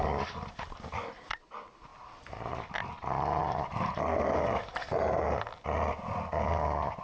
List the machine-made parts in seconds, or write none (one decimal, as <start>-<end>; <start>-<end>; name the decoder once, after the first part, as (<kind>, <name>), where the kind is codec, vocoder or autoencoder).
3.4-5.4 (vocoder, BigVGAN v2)